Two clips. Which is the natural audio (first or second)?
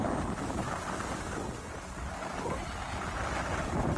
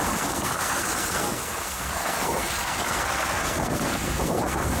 first